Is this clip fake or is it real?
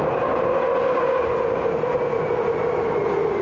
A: real